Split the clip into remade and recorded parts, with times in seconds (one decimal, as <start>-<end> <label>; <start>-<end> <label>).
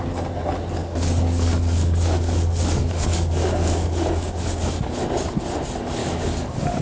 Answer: 0.0-0.8 recorded; 0.8-4.9 remade; 4.9-6.0 recorded; 6.0-6.8 remade